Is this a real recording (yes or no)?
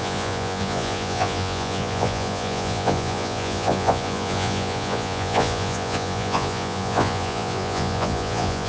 no